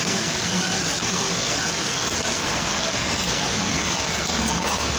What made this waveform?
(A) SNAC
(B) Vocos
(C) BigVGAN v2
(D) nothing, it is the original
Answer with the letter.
A